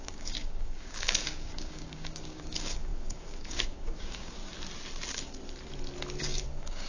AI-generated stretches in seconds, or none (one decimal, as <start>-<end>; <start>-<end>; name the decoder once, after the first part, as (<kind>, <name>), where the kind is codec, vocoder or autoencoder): 0.0-4.4 (codec, DAC); 6.2-6.9